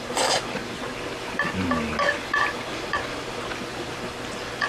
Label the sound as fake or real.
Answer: real